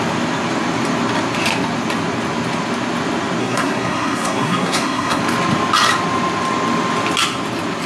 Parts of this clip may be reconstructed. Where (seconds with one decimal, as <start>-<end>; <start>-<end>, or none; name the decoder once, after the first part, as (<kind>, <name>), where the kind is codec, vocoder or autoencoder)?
3.4-5.2 (codec, SNAC)